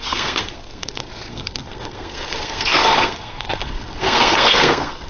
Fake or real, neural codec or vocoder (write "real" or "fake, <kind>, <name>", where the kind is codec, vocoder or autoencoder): fake, codec, SNAC